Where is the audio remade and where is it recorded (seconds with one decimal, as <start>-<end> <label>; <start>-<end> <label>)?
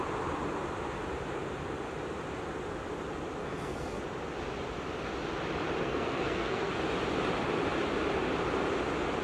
0.0-3.4 recorded; 3.4-4.0 remade; 4.0-5.8 recorded; 5.8-6.7 remade; 6.7-9.2 recorded